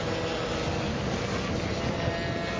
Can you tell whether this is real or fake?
real